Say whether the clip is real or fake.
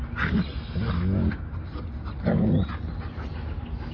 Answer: real